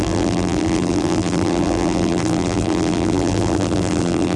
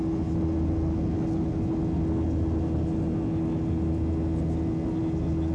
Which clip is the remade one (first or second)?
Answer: first